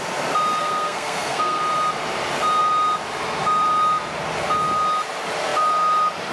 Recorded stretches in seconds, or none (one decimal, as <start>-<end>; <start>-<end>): 0.0-0.6; 1.6-6.3